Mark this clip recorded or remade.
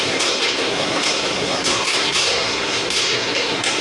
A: remade